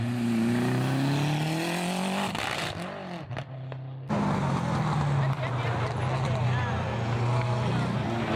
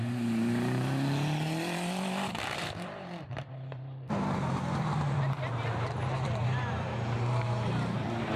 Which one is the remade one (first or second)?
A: second